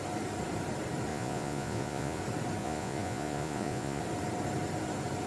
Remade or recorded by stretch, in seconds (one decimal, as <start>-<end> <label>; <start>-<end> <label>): 0.0-1.1 recorded; 1.1-2.2 remade; 2.2-2.6 recorded; 2.6-4.0 remade; 4.0-5.3 recorded